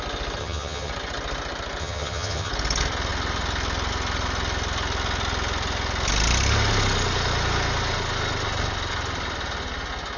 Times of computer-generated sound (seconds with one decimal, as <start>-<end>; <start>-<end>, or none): 0.4-0.9; 1.8-2.5